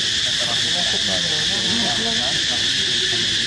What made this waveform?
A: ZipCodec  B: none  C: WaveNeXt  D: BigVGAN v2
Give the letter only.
B